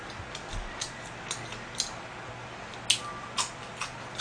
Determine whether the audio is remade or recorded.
recorded